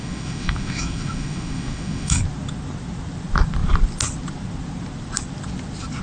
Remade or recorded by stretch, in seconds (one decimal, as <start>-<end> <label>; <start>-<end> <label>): 0.0-2.2 remade; 2.2-6.0 recorded